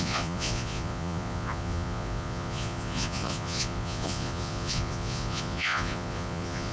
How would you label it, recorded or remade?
remade